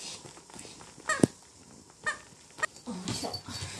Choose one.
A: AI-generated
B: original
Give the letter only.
B